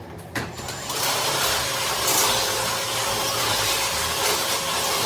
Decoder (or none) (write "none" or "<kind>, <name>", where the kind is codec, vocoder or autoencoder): vocoder, BigVGAN v2